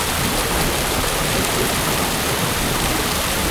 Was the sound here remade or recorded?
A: recorded